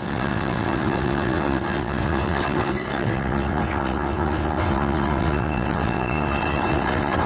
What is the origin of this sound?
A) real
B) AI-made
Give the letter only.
B